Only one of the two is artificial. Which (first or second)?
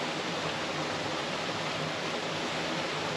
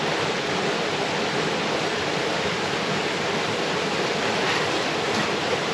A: second